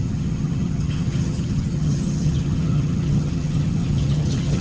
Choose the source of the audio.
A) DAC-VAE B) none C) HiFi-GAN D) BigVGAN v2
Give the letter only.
C